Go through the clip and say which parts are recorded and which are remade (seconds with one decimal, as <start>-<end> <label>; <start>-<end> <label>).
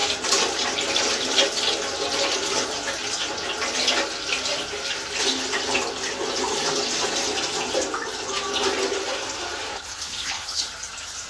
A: 0.0-9.7 recorded; 9.7-10.6 remade; 10.6-11.3 recorded